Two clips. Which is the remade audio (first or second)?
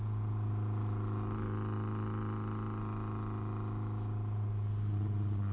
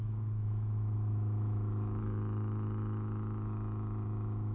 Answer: second